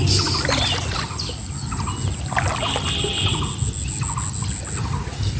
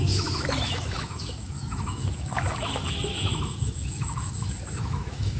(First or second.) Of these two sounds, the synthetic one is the second